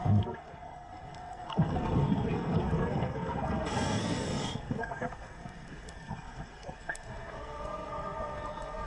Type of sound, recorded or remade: remade